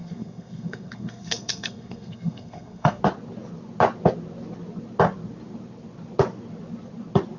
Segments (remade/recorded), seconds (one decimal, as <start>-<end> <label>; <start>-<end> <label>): 0.0-3.0 remade; 3.0-7.4 recorded